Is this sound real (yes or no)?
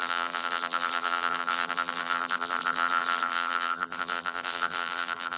no